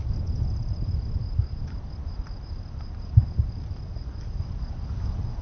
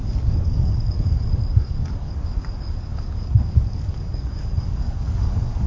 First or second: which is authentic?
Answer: first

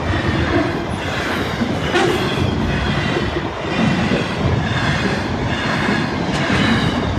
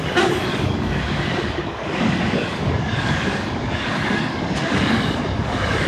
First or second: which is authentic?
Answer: first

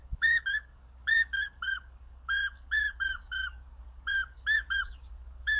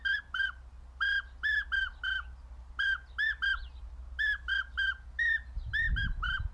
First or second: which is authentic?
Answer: second